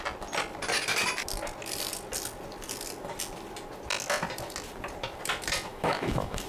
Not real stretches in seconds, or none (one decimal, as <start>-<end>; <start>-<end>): 5.7-6.5